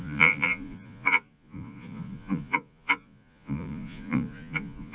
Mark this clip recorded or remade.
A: remade